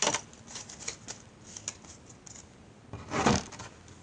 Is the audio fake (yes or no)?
no